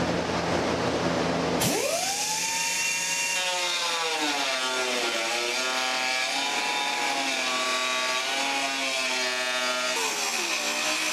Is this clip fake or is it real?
real